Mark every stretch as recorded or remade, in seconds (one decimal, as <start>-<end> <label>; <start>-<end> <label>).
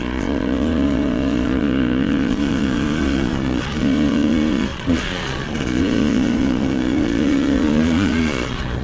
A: 0.0-8.8 remade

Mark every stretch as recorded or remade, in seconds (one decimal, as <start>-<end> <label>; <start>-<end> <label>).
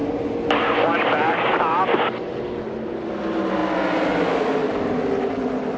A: 0.0-5.8 recorded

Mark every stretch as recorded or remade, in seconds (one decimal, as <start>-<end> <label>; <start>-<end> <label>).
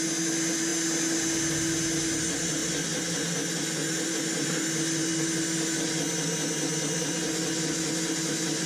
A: 0.0-8.7 recorded